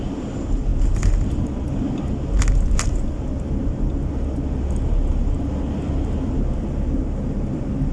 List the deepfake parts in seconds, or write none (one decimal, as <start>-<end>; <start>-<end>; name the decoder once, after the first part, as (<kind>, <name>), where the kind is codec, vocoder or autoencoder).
none